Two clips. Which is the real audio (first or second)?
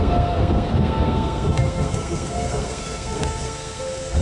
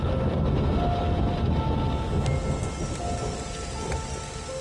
second